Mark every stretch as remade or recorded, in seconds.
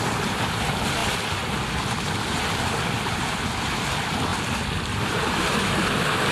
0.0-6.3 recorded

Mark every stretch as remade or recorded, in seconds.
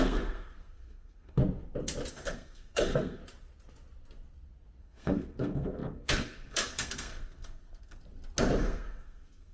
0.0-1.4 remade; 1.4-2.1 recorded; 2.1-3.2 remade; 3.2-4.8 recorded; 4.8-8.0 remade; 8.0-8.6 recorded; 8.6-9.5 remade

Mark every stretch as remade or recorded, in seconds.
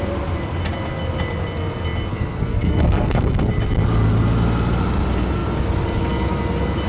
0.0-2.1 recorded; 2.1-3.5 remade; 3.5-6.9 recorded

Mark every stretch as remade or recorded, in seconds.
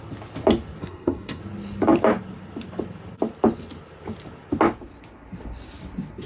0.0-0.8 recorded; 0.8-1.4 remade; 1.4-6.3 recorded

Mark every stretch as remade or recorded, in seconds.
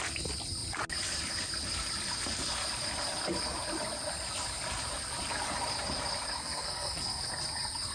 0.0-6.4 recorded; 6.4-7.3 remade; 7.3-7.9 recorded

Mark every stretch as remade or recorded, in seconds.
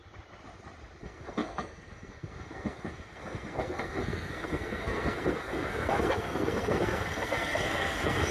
0.0-1.0 recorded; 1.0-8.3 remade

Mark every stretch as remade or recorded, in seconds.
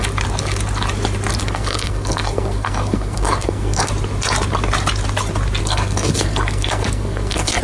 0.0-1.4 recorded; 1.4-3.9 remade; 3.9-5.6 recorded; 5.6-7.6 remade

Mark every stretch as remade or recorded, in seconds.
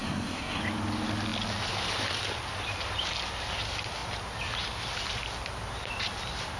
0.0-0.6 remade; 0.6-6.6 recorded